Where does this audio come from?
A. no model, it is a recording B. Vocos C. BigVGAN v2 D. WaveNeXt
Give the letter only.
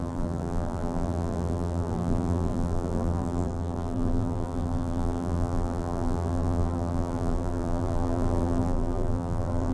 C